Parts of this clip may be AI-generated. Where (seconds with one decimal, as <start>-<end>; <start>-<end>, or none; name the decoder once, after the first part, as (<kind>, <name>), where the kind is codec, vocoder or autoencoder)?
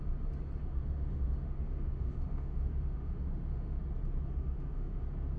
0.6-3.8 (autoencoder, DAC-VAE); 4.3-5.0